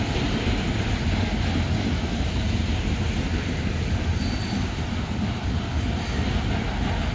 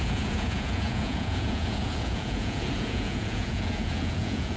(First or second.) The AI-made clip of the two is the second